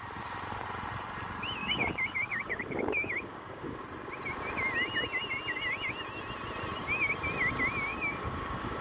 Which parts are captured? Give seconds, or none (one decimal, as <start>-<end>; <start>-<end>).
0.0-1.6; 3.8-7.9